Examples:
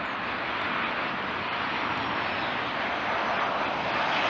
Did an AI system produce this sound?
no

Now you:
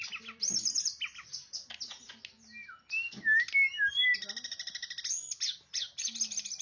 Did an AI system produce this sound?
no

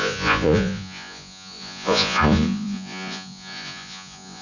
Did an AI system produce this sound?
yes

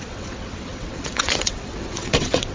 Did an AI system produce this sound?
yes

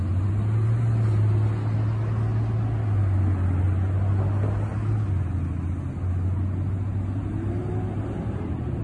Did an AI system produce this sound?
no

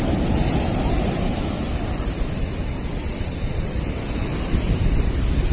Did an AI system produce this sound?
no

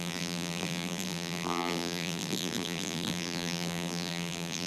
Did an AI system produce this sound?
yes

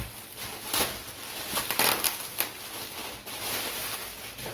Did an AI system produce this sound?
no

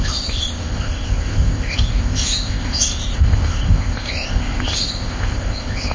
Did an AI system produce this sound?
yes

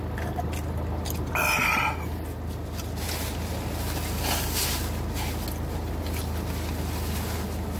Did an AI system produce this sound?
no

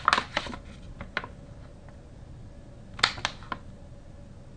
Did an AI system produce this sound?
no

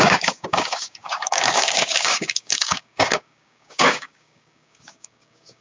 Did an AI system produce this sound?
yes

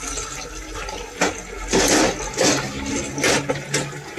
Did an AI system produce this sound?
no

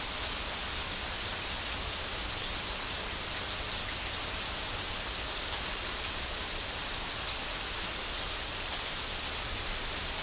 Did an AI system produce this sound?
no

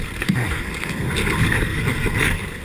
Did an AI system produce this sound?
yes